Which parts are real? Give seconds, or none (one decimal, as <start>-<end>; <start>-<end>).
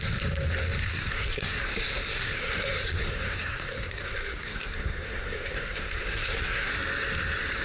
0.0-0.8; 1.6-2.1; 6.7-7.6